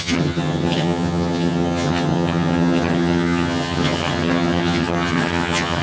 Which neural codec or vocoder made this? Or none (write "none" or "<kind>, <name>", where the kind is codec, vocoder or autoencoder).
vocoder, HiFi-GAN